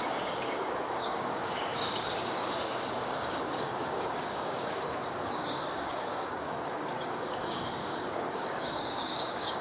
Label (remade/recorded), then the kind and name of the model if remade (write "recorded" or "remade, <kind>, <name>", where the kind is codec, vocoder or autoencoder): remade, codec, DAC